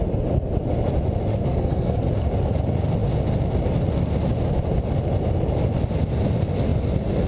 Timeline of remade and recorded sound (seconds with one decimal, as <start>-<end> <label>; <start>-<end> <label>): 0.0-1.3 recorded; 1.3-2.0 remade; 2.0-7.3 recorded